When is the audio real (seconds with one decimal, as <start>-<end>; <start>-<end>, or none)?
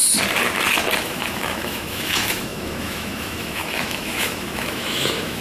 0.0-1.0